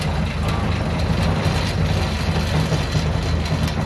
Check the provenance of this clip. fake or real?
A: real